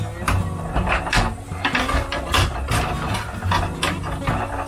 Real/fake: real